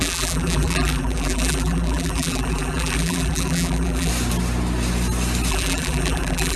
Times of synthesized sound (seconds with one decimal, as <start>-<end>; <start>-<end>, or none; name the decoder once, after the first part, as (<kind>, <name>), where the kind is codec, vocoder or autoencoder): 0.0-4.1 (vocoder, BigVGAN v2); 5.5-6.6